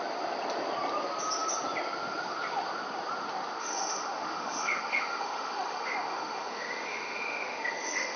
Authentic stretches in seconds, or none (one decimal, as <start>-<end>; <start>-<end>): 0.0-3.6